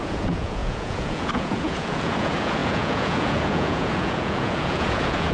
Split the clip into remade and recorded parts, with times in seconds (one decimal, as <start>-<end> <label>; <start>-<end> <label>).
0.0-5.3 remade